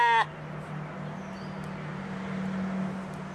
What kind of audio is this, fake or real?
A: real